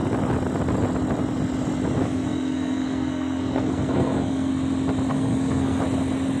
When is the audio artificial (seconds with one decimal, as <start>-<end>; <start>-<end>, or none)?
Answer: 2.0-4.5; 5.1-5.8